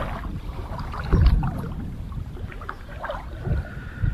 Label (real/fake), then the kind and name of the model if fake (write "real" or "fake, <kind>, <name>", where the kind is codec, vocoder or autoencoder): real